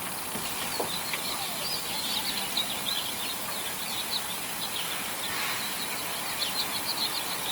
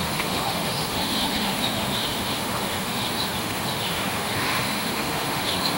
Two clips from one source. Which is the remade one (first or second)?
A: second